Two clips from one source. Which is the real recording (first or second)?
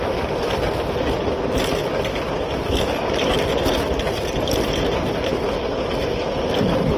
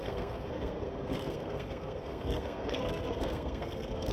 first